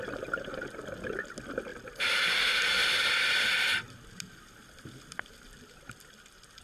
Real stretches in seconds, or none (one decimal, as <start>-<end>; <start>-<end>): 0.0-6.6